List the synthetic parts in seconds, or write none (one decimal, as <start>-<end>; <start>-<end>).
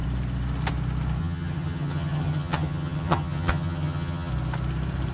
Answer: 1.2-4.3